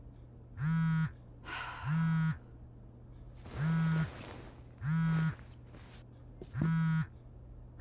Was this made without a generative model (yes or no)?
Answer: yes